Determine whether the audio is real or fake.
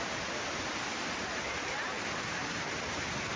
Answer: real